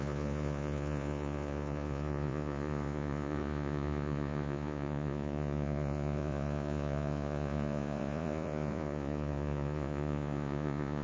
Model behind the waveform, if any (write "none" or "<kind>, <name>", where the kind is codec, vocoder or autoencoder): vocoder, Vocos